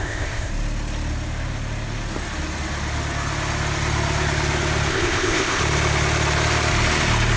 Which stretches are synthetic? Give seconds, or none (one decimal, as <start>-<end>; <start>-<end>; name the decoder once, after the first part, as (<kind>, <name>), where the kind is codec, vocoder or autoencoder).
0.0-0.5 (codec, ZipCodec); 4.9-5.6